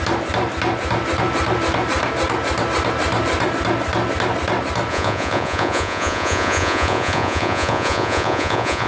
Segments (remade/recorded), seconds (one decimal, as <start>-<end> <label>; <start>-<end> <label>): 0.0-4.9 recorded; 4.9-8.9 remade